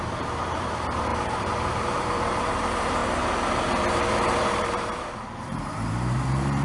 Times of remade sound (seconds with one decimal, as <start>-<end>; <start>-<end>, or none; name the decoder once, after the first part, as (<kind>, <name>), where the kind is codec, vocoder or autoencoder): 0.0-3.0 (vocoder, BigVGAN v2); 3.9-6.6